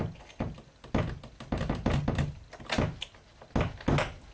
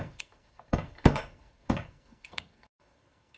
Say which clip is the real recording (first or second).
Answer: first